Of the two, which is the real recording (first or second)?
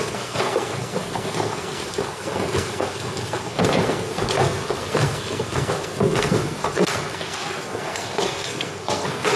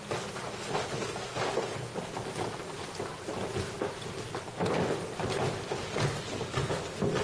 second